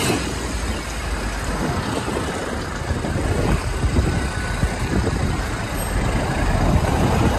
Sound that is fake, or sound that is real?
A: real